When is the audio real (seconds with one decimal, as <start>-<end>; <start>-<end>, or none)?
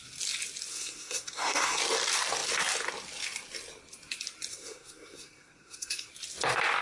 0.0-0.7; 1.8-4.5; 6.1-6.8